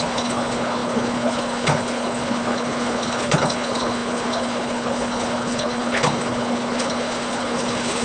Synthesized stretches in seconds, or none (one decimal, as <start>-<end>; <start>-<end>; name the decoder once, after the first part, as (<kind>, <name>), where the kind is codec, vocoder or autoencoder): 0.0-8.0 (codec, HILCodec)